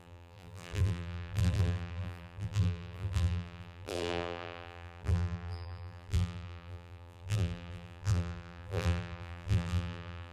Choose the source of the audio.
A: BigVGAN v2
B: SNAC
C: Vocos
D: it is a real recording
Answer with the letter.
A